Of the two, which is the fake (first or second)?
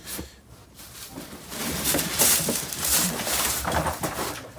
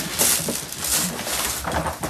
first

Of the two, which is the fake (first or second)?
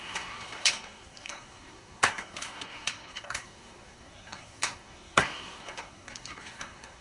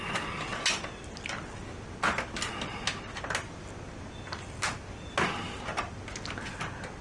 first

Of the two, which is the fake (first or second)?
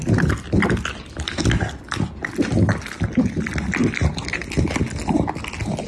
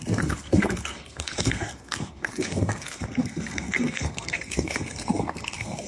second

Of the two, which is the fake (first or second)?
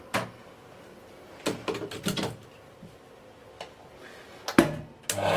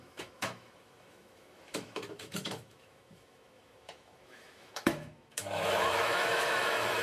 second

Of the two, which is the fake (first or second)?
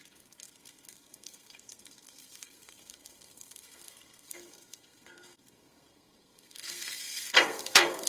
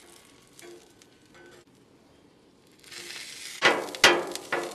first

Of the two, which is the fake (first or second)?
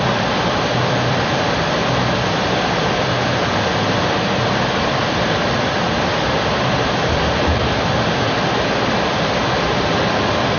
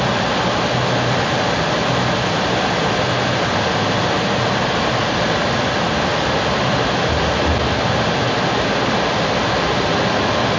first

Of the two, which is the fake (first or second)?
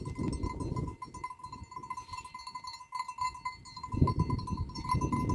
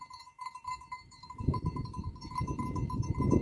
second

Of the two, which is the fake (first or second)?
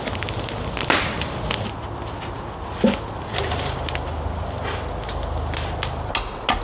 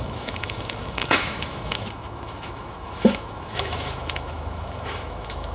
second